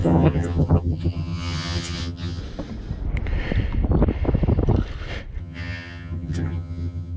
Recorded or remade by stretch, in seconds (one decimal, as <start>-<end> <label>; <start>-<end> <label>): 0.0-2.4 remade; 2.4-5.4 recorded; 5.4-7.2 remade